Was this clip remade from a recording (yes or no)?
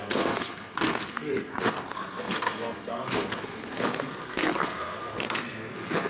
yes